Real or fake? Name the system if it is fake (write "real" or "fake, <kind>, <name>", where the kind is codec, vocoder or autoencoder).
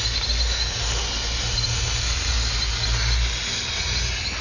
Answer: real